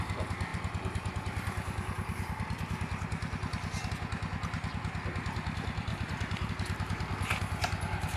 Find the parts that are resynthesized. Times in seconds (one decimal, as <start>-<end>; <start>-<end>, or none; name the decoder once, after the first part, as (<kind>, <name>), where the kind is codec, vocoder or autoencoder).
5.9-6.5 (vocoder, BigVGAN v2)